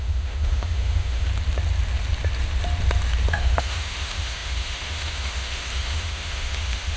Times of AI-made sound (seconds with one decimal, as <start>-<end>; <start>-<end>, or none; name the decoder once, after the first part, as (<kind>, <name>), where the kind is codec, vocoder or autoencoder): 0.0-1.3 (autoencoder, DAC-VAE); 3.3-7.0